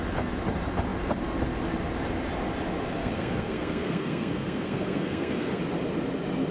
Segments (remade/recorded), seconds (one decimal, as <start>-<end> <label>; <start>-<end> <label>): 0.0-3.0 recorded; 3.0-5.6 remade; 5.6-6.5 recorded